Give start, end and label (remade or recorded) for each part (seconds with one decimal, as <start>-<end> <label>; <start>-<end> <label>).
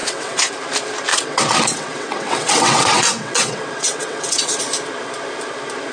0.0-0.5 remade; 0.5-1.1 recorded; 1.1-4.6 remade; 4.6-5.9 recorded